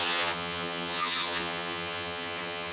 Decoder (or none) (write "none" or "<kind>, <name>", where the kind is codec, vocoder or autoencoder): vocoder, HiFi-GAN